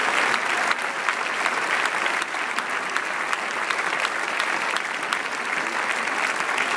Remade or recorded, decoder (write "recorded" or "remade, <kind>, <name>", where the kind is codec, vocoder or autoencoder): recorded